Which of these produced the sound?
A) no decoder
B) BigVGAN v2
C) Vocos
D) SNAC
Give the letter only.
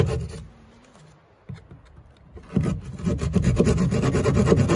A